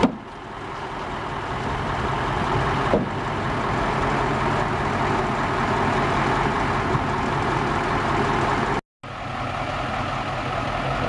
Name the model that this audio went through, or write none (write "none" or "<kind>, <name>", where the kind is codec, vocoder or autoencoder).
none